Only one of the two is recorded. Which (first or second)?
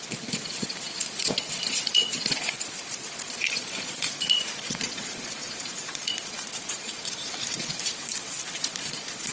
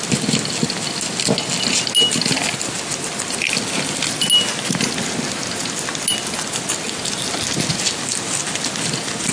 second